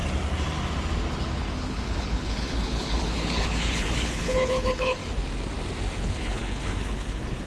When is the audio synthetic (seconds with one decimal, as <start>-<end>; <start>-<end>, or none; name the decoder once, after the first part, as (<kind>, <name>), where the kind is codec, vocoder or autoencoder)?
1.2-5.0 (codec, HILCodec); 5.9-7.5